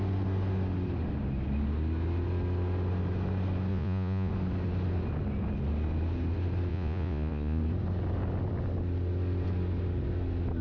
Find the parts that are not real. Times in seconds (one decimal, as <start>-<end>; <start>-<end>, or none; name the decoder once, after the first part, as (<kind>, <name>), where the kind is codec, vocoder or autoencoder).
3.7-4.3 (vocoder, Vocos); 6.7-7.6